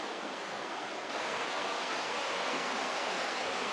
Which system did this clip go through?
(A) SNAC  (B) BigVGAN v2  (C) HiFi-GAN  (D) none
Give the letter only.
A